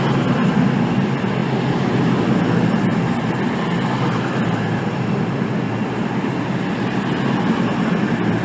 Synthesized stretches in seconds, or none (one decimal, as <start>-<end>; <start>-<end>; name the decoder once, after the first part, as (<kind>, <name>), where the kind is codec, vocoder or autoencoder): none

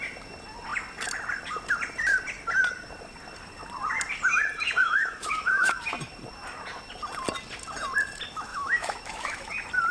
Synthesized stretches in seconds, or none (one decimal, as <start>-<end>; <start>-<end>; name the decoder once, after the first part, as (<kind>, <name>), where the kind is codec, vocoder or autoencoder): 4.8-5.8 (autoencoder, DAC-VAE); 8.5-9.5

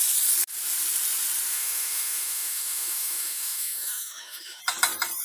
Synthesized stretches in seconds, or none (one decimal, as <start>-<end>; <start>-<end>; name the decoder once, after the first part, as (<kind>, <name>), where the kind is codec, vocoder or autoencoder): 1.5-4.6 (autoencoder, DAC-VAE)